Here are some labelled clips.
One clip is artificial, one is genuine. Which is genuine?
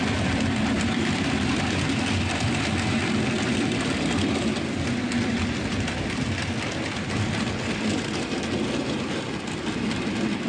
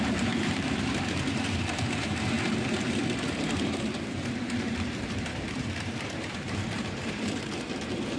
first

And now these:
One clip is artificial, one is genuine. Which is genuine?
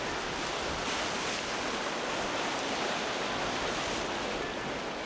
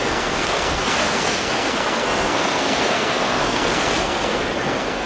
first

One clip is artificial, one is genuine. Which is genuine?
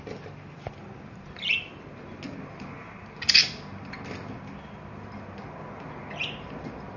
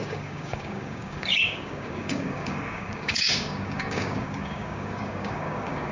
first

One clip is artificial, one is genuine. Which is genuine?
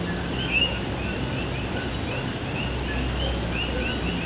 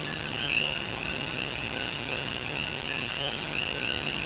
first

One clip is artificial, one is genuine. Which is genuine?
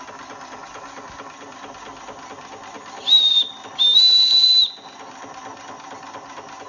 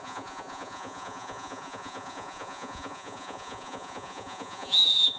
first